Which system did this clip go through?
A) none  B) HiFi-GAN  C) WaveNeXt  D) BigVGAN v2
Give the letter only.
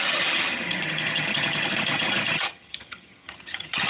B